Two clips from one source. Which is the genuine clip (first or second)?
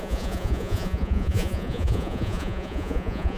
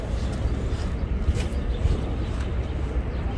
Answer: second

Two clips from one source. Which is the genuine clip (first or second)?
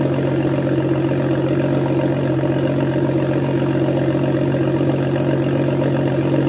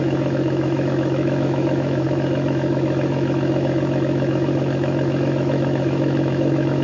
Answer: first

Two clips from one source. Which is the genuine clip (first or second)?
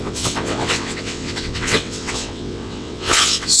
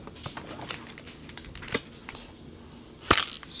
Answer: second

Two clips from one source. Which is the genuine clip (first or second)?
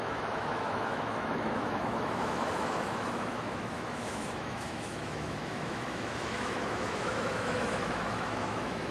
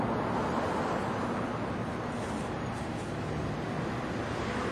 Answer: second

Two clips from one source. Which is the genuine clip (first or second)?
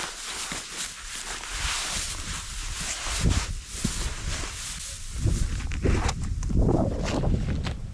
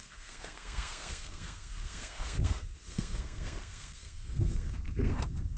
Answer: first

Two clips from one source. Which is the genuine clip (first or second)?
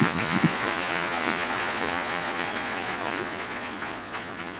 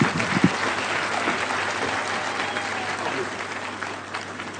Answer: second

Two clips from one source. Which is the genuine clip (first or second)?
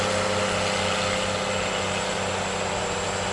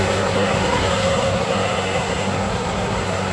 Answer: first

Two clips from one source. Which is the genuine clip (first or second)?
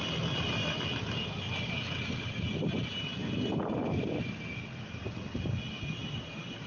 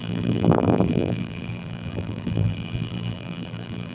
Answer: first